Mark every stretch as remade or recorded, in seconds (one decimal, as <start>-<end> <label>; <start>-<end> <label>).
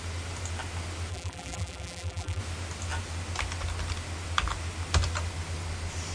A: 0.0-1.1 recorded; 1.1-2.4 remade; 2.4-6.1 recorded